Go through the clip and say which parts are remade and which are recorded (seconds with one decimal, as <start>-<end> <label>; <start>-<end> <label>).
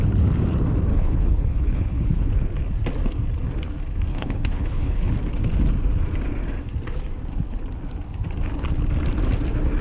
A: 0.0-0.9 recorded; 0.9-2.3 remade; 2.3-4.1 recorded; 4.1-5.1 remade; 5.1-9.8 recorded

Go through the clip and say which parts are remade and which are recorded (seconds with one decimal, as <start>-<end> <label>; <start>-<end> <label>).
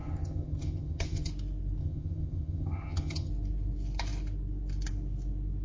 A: 0.0-1.3 remade; 1.3-1.8 recorded; 1.8-3.3 remade; 3.3-5.6 recorded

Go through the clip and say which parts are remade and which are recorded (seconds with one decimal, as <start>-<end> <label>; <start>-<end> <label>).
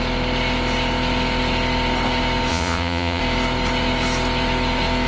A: 0.0-2.5 recorded; 2.5-3.2 remade; 3.2-5.1 recorded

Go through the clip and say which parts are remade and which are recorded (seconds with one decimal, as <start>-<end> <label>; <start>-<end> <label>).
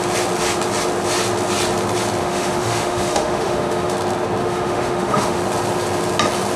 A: 0.0-2.2 recorded; 2.2-3.9 remade; 3.9-4.4 recorded; 4.4-5.4 remade; 5.4-6.6 recorded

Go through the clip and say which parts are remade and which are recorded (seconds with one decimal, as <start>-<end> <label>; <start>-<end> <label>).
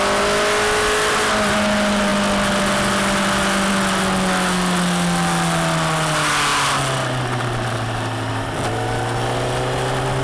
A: 0.0-10.2 recorded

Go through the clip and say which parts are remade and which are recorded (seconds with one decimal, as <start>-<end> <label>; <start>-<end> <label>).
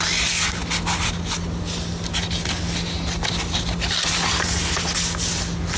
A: 0.0-5.8 recorded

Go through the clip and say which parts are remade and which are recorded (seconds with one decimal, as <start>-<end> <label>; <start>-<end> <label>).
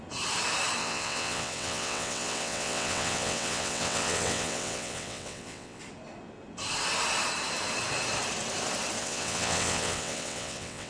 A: 0.0-0.8 recorded; 0.8-5.8 remade; 5.8-9.0 recorded; 9.0-10.9 remade